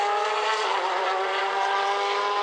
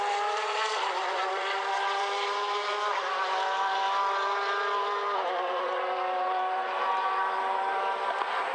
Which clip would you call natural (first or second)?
first